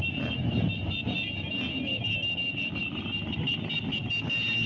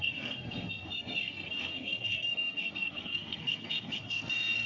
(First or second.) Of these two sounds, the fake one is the second